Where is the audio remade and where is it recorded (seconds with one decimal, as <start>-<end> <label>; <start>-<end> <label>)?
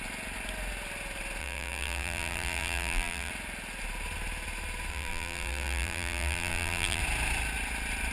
0.0-1.4 recorded; 1.4-3.3 remade; 3.3-4.9 recorded; 4.9-7.0 remade; 7.0-8.1 recorded